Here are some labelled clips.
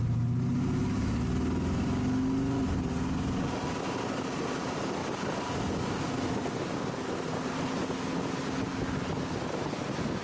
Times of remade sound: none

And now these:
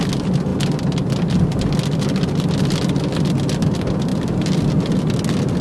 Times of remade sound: none

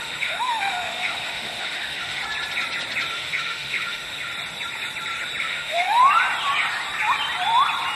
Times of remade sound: 0.0-2.2 (autoencoder, DAC-VAE); 3.1-4.3; 5.4-6.0

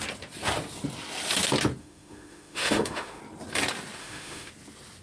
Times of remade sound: 1.8-3.2 (autoencoder, DAC-VAE); 4.0-4.5

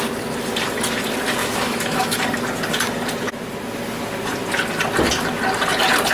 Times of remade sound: 1.4-2.2 (autoencoder, DAC-VAE)

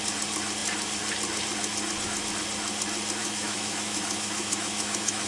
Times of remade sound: 3.2-5.3 (autoencoder, DAC-VAE)